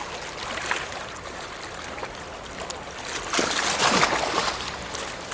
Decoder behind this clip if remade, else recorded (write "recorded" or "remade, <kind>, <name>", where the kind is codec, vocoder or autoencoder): recorded